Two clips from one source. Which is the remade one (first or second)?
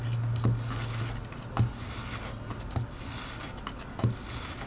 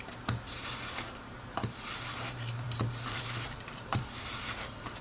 second